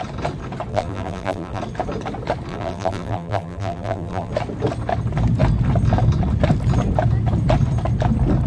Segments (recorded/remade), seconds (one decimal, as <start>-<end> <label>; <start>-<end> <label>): 0.0-0.7 recorded; 0.7-1.6 remade; 1.6-2.5 recorded; 2.5-4.3 remade; 4.3-8.5 recorded